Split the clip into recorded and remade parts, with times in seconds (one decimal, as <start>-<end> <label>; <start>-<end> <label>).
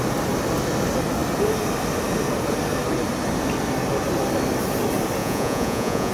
0.0-5.2 recorded; 5.2-6.1 remade